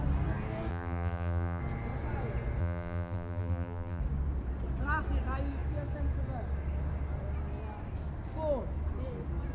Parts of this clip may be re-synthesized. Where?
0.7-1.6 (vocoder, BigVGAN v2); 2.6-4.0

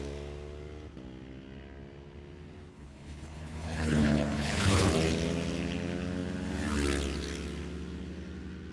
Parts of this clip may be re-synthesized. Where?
2.7-4.9 (codec, HILCodec)

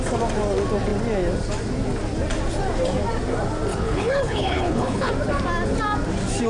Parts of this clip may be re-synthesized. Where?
3.7-5.1 (codec, HILCodec)

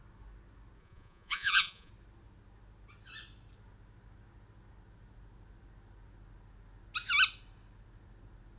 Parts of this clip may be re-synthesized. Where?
0.8-1.9 (vocoder, Vocos)

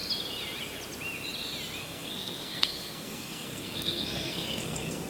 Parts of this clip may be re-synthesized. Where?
1.8-5.1 (codec, SNAC)

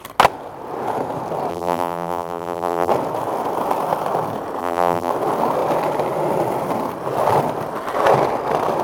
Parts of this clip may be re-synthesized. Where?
1.5-2.9 (vocoder, BigVGAN v2); 4.6-5.1

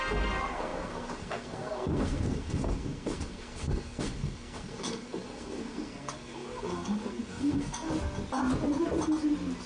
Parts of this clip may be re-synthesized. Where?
0.0-7.9 (codec, SNAC)